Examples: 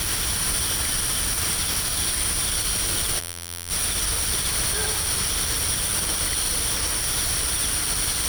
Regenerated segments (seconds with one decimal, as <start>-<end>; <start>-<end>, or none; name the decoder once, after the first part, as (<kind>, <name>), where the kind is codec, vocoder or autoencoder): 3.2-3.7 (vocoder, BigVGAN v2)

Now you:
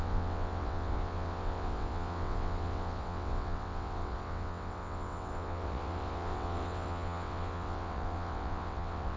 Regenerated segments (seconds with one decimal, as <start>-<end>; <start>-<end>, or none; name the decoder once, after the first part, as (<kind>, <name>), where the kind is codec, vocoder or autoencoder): 0.0-9.2 (vocoder, WaveNeXt)

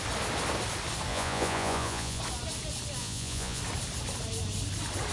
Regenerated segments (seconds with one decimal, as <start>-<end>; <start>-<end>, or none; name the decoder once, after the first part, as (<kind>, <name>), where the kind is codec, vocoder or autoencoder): 1.1-2.2 (vocoder, Vocos); 3.0-3.6